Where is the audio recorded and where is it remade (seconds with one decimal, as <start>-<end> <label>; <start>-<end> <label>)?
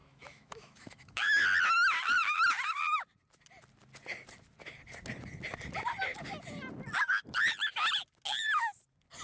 0.0-1.4 remade; 1.4-9.2 recorded